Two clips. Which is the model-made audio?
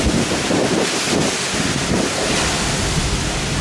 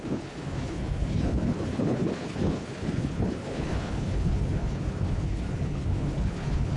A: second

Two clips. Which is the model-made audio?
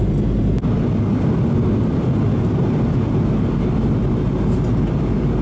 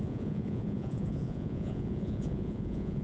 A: second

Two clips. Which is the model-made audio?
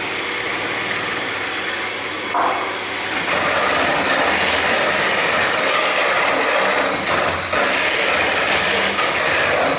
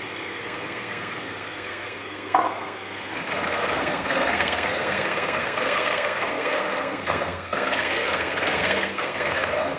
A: second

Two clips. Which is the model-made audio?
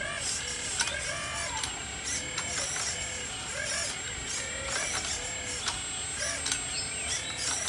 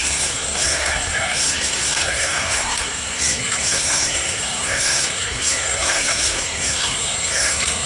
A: second